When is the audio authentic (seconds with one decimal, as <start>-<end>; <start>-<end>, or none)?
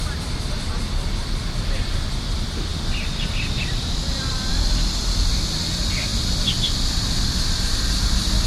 0.0-2.7; 4.5-6.1